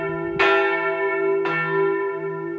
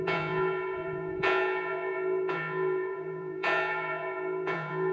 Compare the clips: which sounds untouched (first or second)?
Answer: first